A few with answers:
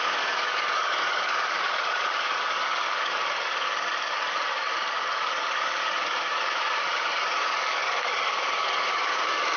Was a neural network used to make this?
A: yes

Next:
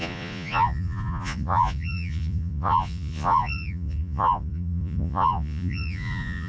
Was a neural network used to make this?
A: yes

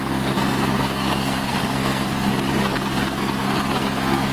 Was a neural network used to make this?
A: yes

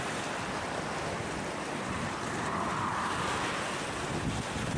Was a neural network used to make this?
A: no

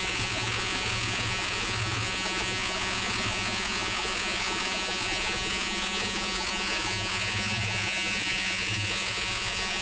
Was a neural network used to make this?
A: yes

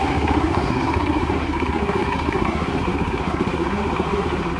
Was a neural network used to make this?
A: yes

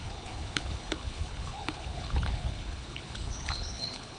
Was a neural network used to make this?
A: yes